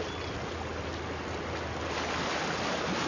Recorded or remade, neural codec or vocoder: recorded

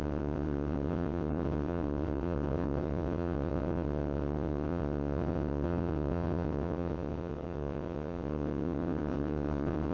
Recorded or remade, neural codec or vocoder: remade, vocoder, WaveNeXt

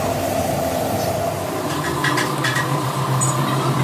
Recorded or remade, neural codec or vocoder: remade, vocoder, BigVGAN v2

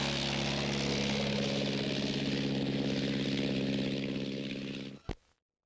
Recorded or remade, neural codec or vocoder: recorded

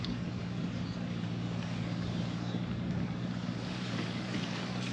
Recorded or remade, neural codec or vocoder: remade, codec, DAC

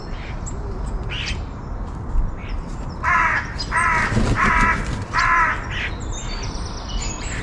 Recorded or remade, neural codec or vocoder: recorded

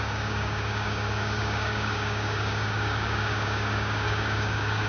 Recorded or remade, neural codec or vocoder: remade, codec, DAC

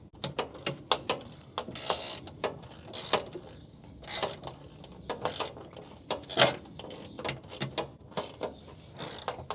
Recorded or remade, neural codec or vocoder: recorded